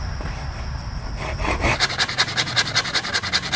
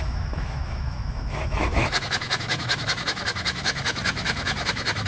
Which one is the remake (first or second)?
second